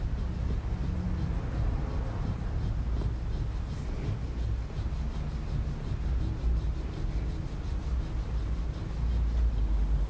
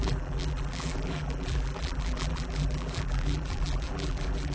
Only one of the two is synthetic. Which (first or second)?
second